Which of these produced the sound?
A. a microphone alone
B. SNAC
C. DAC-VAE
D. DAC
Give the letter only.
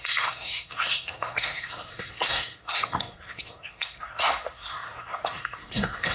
B